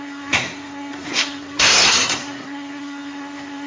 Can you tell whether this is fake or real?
fake